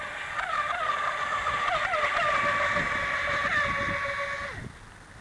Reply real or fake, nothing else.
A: real